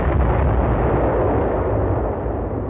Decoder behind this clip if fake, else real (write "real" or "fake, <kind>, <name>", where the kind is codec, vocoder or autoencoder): real